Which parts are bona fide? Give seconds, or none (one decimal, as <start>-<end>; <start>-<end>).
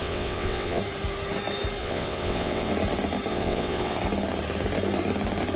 0.8-1.8; 2.7-3.3; 4.0-5.6